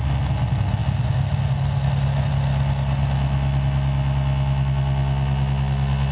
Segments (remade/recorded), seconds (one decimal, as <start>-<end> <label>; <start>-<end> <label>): 0.0-6.1 recorded